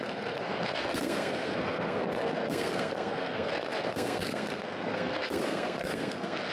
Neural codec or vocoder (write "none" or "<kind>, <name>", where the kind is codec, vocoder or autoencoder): codec, SNAC